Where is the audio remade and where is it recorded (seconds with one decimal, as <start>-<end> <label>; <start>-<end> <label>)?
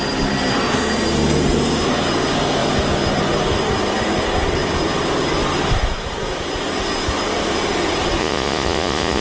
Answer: 0.0-8.2 recorded; 8.2-9.2 remade